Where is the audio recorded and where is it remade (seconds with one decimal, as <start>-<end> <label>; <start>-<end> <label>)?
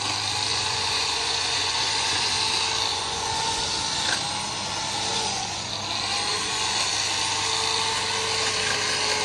0.0-0.5 recorded; 0.5-2.3 remade; 2.3-2.9 recorded; 2.9-3.6 remade; 3.6-5.1 recorded; 5.1-5.7 remade; 5.7-6.3 recorded; 6.3-6.8 remade; 6.8-9.2 recorded